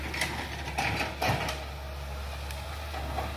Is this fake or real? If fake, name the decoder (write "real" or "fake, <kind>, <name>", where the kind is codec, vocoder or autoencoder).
real